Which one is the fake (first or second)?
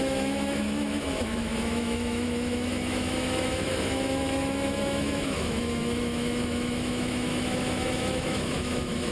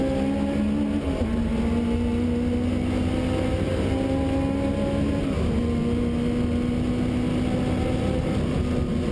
first